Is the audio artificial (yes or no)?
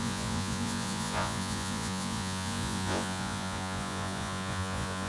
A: yes